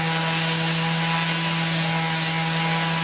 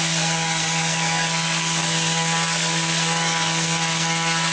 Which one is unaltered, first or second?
first